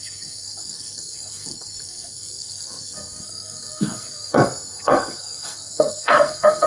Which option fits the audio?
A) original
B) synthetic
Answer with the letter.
B